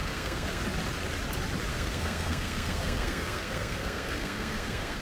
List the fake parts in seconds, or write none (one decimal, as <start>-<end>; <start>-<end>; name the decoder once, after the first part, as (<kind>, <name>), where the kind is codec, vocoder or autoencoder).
0.0-0.6 (codec, SNAC); 1.7-5.0